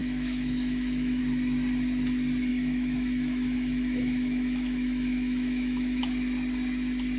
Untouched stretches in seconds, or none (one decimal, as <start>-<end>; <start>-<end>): 1.2-2.5; 6.0-7.2